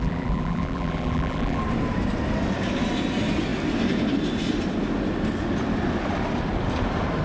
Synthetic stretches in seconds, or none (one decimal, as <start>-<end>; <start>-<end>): 0.0-1.6